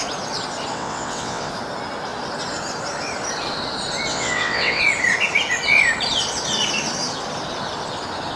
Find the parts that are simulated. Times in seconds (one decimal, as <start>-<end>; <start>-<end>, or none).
0.7-1.5; 4.1-4.8